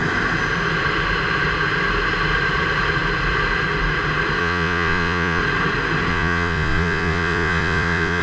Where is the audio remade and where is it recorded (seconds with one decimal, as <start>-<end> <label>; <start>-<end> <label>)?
0.0-4.4 recorded; 4.4-5.4 remade; 5.4-6.1 recorded; 6.1-8.2 remade